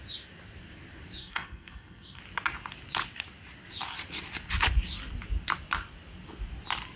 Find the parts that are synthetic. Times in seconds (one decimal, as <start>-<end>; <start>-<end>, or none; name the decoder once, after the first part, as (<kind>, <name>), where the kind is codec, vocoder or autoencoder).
1.2-2.2 (codec, SNAC)